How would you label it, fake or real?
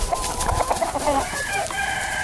fake